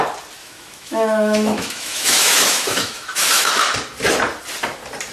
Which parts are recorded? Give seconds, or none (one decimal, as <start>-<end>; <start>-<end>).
0.0-0.4; 3.5-5.1